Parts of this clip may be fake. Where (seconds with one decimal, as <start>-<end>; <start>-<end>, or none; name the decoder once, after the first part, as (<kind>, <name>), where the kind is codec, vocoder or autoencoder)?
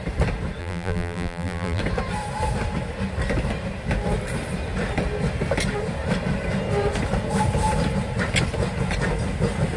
0.6-1.8 (vocoder, BigVGAN v2)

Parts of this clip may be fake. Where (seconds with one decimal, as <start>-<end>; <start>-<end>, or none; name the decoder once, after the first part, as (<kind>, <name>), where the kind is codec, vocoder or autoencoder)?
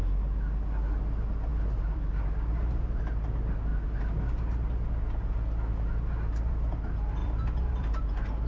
1.5-2.2 (vocoder, BigVGAN v2); 7.2-8.0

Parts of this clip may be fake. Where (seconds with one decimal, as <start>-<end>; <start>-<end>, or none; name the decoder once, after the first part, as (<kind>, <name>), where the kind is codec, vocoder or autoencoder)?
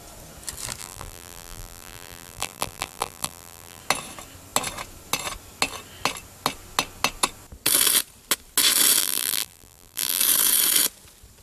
0.8-3.8 (vocoder, BigVGAN v2); 9.0-10.2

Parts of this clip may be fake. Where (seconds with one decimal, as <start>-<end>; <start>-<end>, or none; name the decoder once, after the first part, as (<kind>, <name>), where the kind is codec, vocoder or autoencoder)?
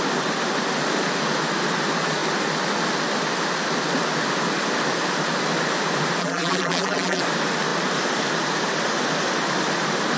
6.2-7.2 (vocoder, BigVGAN v2)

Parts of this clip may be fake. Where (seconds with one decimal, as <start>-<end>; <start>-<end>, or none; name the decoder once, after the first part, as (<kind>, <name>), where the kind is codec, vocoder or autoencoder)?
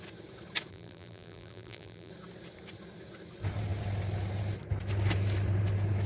0.7-2.1 (vocoder, BigVGAN v2)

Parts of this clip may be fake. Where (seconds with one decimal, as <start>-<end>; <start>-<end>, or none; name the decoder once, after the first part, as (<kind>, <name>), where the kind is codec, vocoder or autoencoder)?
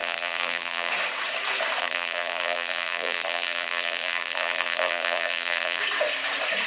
0.0-0.9 (vocoder, BigVGAN v2); 1.8-5.8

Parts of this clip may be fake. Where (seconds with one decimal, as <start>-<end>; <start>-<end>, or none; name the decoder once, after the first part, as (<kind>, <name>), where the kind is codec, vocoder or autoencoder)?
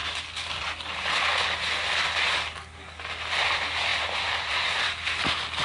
3.4-5.6 (vocoder, BigVGAN v2)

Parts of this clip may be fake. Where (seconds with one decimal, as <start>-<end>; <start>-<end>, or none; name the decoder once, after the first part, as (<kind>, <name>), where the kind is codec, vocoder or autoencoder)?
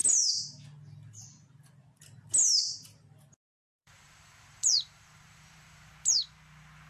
3.7-5.9 (vocoder, BigVGAN v2)